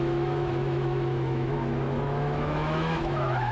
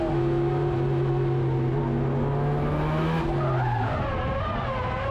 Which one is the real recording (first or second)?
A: second